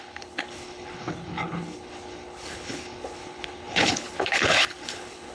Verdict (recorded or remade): remade